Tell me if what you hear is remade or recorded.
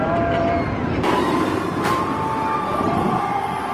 recorded